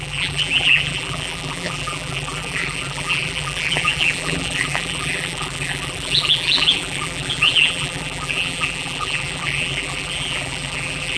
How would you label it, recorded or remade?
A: remade